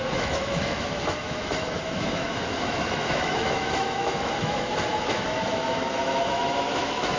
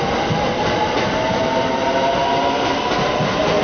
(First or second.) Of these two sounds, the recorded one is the second